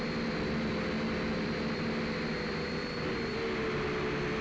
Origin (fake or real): real